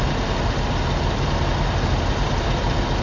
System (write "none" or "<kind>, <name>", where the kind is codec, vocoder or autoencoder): none